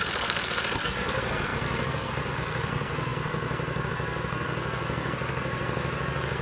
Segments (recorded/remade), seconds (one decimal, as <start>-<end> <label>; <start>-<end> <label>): 0.0-6.4 remade